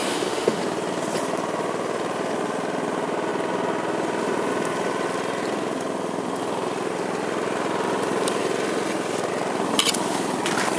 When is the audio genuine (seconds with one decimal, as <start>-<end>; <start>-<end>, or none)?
0.6-10.8